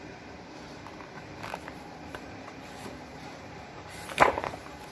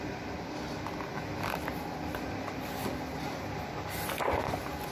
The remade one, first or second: first